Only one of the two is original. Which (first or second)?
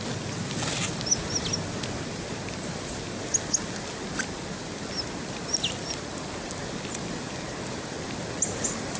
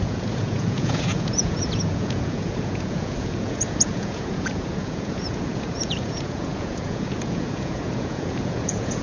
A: first